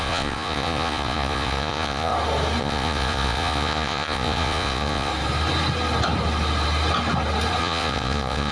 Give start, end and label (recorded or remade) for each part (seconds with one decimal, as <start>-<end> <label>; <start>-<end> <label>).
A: 0.0-2.1 remade; 2.1-2.6 recorded; 2.6-5.1 remade; 5.1-7.6 recorded; 7.6-8.5 remade